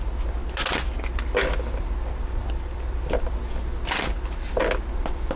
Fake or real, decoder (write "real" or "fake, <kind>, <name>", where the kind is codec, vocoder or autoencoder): real